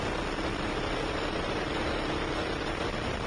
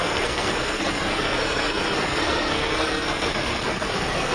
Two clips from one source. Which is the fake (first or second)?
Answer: second